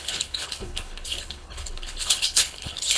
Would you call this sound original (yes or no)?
no